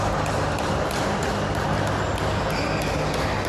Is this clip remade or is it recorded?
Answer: recorded